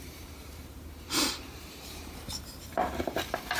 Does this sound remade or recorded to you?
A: remade